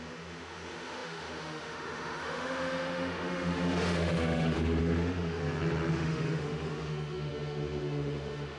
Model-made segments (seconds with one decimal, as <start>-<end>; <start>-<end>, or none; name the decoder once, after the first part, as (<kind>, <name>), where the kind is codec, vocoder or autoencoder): 0.0-5.4 (autoencoder, DAC-VAE); 5.9-8.6